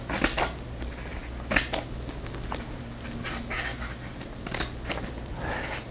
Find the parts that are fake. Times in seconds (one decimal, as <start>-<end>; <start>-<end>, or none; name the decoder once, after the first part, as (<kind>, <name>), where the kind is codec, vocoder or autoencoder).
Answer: none